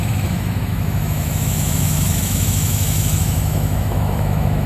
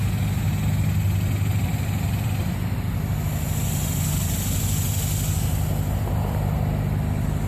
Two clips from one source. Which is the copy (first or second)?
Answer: first